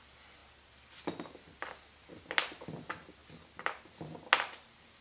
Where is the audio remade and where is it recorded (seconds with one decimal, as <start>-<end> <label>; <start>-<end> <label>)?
0.0-5.0 recorded